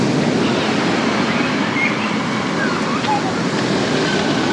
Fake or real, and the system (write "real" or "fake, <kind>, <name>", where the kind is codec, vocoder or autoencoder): real